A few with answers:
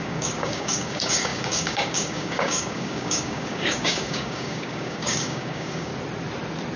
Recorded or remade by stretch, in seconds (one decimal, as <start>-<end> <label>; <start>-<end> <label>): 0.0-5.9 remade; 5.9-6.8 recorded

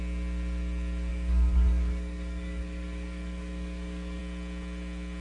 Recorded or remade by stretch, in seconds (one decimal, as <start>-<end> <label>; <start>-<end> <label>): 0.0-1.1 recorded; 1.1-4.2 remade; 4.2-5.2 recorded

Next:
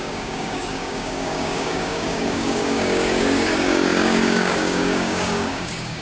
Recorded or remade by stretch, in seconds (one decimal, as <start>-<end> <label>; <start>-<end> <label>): 0.0-6.0 remade

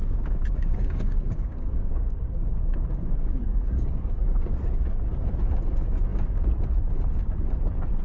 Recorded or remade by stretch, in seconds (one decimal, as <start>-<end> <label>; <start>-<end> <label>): 0.0-4.2 remade; 4.2-8.0 recorded

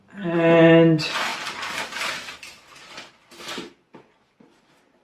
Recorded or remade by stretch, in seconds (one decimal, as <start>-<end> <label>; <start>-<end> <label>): 0.0-5.0 recorded